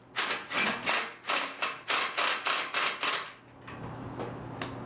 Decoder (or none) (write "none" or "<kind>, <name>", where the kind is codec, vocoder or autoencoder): none